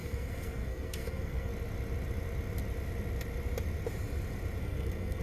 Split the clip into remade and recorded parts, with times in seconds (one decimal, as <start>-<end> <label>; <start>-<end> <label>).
0.0-1.5 remade; 1.5-4.6 recorded; 4.6-5.2 remade